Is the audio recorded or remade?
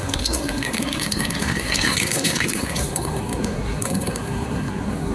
remade